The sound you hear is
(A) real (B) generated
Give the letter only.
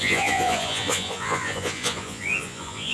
B